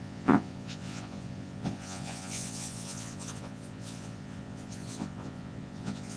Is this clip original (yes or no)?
no